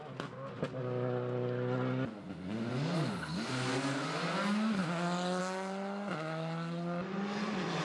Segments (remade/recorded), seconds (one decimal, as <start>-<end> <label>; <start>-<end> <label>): 0.0-7.8 recorded